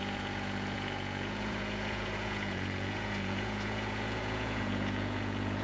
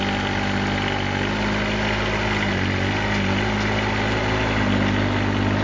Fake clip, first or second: first